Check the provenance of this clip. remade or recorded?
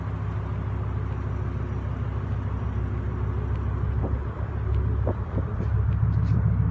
recorded